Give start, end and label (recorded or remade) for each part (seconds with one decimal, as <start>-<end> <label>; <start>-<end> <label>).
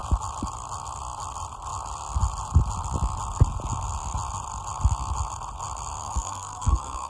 0.0-6.0 recorded; 6.0-7.1 remade